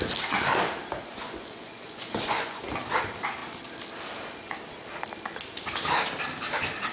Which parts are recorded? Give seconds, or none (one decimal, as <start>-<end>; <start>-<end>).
0.0-1.1; 2.6-6.9